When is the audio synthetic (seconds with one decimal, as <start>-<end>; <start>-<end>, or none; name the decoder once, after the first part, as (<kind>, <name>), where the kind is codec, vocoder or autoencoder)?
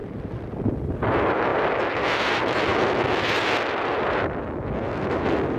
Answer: none